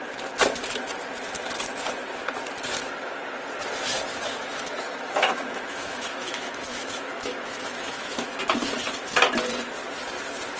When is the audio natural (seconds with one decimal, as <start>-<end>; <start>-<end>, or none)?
0.0-4.1; 8.4-10.6